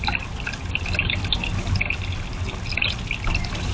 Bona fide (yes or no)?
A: yes